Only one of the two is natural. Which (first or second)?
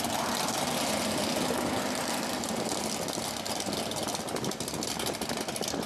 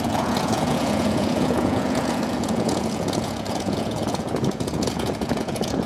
first